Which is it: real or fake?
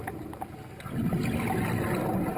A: real